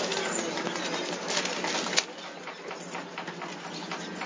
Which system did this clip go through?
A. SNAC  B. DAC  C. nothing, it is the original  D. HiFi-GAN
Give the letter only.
C